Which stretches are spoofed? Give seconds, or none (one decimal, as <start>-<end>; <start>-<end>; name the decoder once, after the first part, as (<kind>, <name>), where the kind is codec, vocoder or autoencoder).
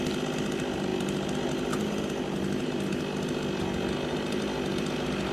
none